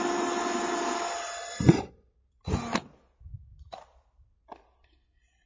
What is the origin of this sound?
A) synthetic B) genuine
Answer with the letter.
B